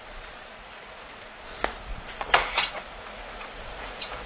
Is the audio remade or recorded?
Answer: remade